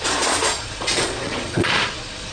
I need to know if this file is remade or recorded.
remade